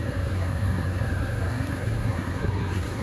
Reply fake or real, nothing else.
fake